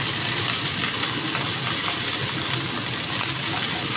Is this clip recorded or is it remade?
recorded